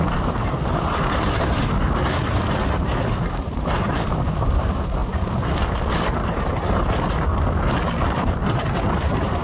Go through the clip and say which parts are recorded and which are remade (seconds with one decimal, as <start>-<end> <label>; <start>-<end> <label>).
0.0-7.3 remade; 7.3-8.0 recorded; 8.0-9.4 remade